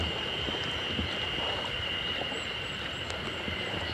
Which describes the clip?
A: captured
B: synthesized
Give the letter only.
A